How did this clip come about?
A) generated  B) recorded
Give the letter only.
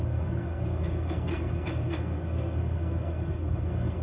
A